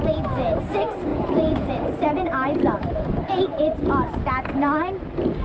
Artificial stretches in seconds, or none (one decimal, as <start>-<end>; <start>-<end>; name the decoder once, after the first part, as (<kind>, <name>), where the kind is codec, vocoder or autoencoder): 1.1-1.7 (vocoder, Vocos)

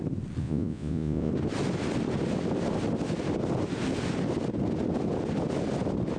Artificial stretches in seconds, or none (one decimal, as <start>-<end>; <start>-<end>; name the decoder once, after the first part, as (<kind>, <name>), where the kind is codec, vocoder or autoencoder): 0.4-1.3 (vocoder, Vocos)

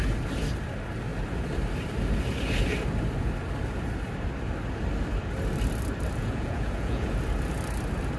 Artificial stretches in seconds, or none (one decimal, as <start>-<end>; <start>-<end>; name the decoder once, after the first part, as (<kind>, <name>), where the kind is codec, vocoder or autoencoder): 6.2-7.1 (vocoder, Vocos)

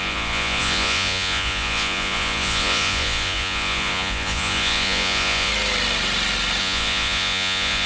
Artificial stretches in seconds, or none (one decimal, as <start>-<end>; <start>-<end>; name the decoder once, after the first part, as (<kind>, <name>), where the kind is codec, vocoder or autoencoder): 0.0-5.5 (vocoder, Vocos); 6.6-7.9